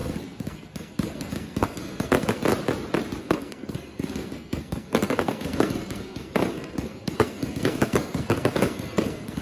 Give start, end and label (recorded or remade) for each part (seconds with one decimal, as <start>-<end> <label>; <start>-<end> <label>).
0.0-2.4 remade; 2.4-3.2 recorded; 3.2-9.4 remade